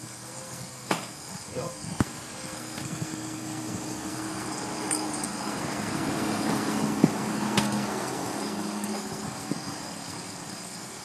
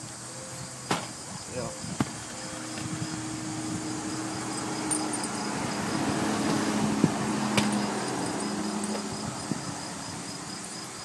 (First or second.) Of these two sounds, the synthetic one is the first